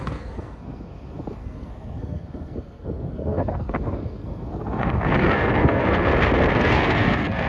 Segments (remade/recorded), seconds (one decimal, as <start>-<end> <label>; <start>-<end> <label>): 0.0-6.1 remade; 6.1-6.6 recorded; 6.6-7.5 remade